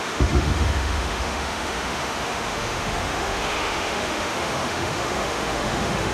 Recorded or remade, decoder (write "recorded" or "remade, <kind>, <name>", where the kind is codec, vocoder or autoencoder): remade, autoencoder, DAC-VAE